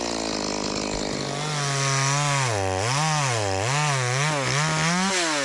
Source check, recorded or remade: recorded